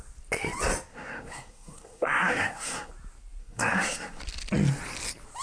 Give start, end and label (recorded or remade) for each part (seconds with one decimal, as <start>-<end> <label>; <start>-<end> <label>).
0.0-0.9 recorded; 0.9-2.9 remade; 2.9-3.4 recorded; 3.4-4.2 remade; 4.2-5.4 recorded